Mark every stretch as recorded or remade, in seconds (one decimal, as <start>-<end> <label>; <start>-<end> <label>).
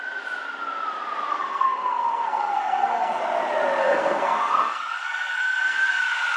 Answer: 0.0-1.3 recorded; 1.3-3.2 remade; 3.2-3.8 recorded; 3.8-6.0 remade; 6.0-6.4 recorded